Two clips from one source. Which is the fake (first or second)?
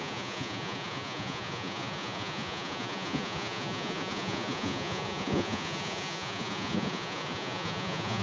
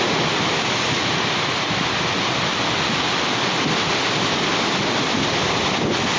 first